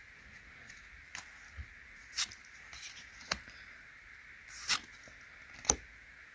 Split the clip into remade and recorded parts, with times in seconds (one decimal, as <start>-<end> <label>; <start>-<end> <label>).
0.0-6.3 recorded